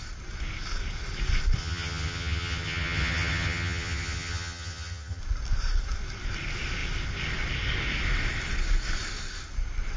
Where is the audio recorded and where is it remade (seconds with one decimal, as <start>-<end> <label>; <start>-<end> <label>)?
0.0-1.6 recorded; 1.6-5.2 remade; 5.2-10.0 recorded